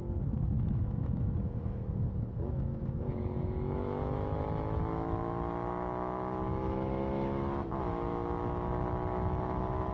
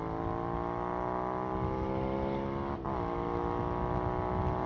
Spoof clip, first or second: first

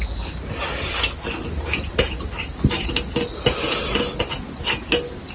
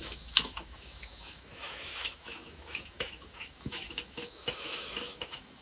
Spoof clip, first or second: second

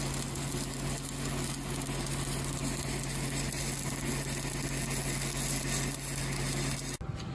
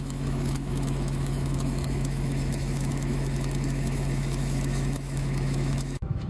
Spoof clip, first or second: second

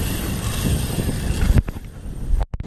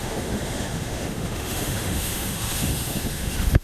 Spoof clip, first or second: second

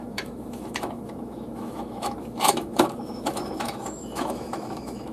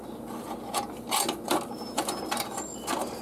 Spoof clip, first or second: first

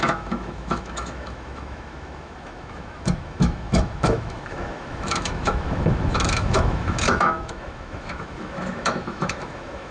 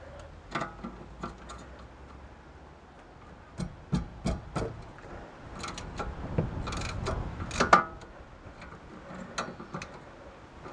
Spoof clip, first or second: first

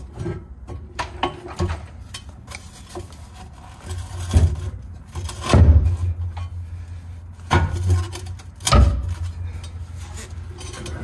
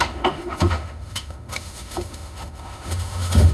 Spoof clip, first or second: second